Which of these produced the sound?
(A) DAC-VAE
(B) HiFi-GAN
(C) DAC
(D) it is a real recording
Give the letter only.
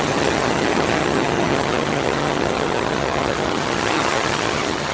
B